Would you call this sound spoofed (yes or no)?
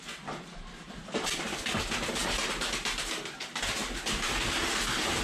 no